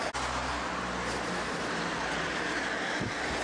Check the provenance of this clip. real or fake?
real